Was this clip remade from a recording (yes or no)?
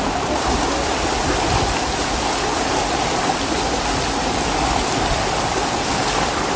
no